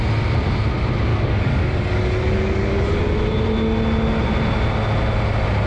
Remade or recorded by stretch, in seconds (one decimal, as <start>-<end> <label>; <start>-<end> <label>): 0.0-1.1 recorded; 1.1-3.0 remade; 3.0-5.7 recorded